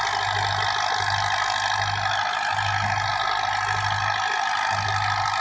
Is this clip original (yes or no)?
yes